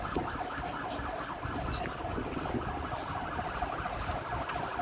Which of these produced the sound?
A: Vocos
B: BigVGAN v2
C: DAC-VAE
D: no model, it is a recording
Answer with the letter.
D